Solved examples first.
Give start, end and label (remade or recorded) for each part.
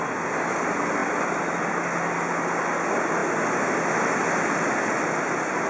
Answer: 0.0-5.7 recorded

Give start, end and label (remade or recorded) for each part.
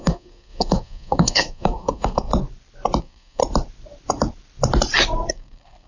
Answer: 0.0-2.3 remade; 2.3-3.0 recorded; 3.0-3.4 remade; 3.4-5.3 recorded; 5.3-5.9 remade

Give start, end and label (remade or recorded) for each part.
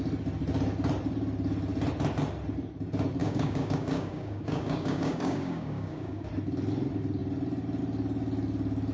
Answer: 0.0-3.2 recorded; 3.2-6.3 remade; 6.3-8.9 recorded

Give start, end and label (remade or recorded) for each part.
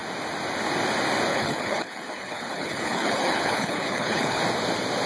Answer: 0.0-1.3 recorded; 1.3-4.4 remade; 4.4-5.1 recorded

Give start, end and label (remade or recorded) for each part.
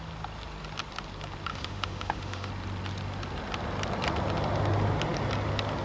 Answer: 0.0-1.5 recorded; 1.5-2.5 remade; 2.5-5.8 recorded